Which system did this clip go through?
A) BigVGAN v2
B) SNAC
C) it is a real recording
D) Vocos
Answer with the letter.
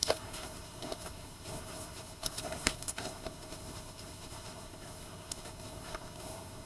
B